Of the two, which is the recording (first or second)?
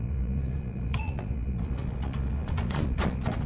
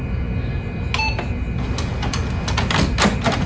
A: second